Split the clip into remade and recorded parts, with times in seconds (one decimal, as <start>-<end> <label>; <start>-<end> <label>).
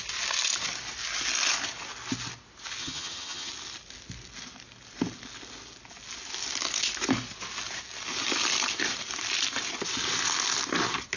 0.0-2.8 recorded; 2.8-3.5 remade; 3.5-11.2 recorded